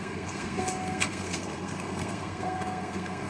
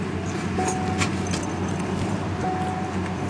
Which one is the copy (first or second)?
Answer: first